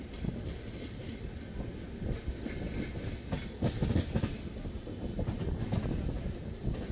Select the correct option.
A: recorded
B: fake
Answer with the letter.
A